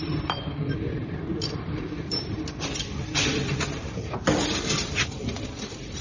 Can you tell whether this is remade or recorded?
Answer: remade